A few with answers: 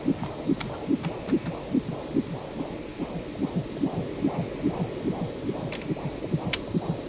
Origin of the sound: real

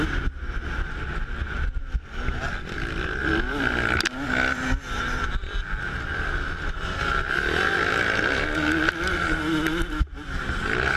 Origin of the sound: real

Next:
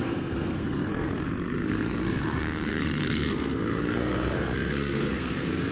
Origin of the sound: fake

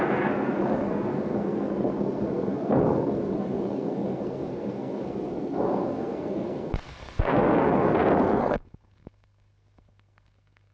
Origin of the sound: fake